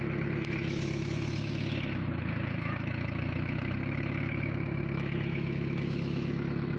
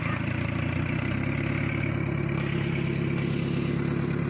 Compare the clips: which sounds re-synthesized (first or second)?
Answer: first